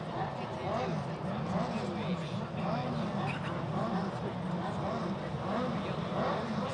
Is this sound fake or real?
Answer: real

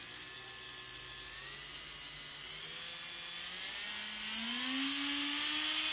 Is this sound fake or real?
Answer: real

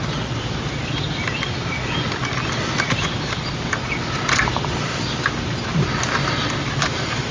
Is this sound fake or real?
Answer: real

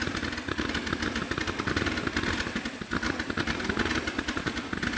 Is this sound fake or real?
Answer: real